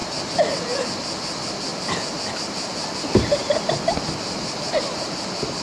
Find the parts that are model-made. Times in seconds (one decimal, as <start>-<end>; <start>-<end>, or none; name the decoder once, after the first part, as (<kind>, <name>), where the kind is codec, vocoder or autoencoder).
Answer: none